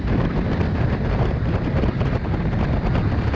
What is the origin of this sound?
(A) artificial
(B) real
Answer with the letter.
B